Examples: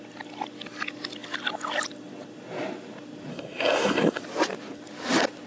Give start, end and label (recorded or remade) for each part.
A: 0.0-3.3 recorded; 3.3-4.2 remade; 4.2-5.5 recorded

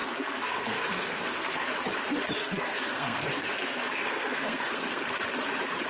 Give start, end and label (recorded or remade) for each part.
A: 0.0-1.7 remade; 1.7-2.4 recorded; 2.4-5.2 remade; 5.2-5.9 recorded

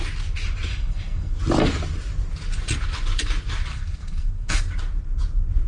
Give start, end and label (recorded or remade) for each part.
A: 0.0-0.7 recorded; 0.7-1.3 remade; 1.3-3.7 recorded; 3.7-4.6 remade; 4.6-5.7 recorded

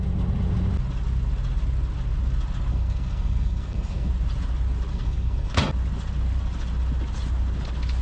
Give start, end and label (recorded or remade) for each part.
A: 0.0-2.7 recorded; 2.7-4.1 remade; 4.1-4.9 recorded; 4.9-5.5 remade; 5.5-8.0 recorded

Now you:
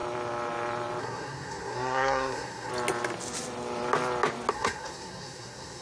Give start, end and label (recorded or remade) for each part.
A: 0.0-1.0 recorded; 1.0-2.7 remade; 2.7-4.5 recorded; 4.5-5.8 remade

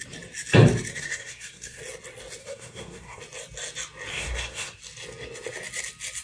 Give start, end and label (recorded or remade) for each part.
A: 0.0-0.9 recorded; 0.9-1.8 remade; 1.8-2.4 recorded; 2.4-3.2 remade; 3.2-4.1 recorded; 4.1-4.8 remade; 4.8-6.2 recorded

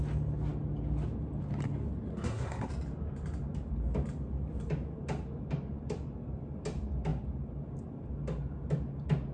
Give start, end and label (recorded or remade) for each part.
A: 0.0-2.1 recorded; 2.1-2.7 remade; 2.7-9.3 recorded

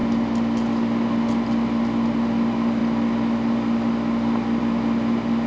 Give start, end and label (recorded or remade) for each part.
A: 0.0-5.5 recorded